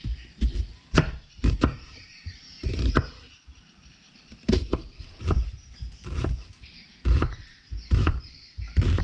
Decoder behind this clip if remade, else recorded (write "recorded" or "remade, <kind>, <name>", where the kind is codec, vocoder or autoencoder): remade, vocoder, BigVGAN v2